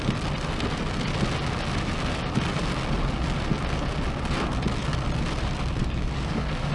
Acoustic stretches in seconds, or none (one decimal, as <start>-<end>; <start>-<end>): 0.0-5.8